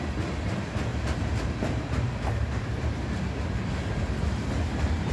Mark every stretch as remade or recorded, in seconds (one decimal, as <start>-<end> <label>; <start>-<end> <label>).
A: 0.0-0.9 recorded; 0.9-4.0 remade; 4.0-5.1 recorded